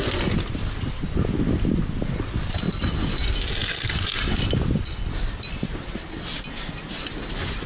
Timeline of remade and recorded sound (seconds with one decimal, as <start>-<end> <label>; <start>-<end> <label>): 0.0-7.7 recorded